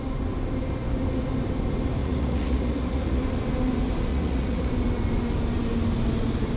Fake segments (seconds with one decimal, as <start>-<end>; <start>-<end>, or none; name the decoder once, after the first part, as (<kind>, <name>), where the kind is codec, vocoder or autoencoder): 2.0-3.2 (vocoder, Vocos); 4.1-4.7